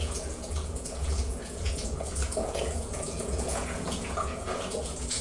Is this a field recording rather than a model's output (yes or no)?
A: no